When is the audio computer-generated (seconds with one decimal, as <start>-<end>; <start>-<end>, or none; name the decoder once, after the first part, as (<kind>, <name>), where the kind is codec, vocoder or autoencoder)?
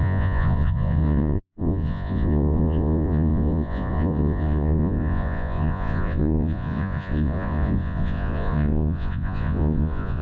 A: 0.0-10.2 (vocoder, Vocos)